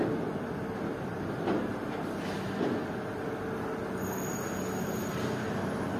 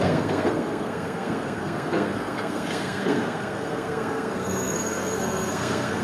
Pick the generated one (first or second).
second